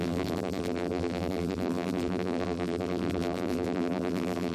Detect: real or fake fake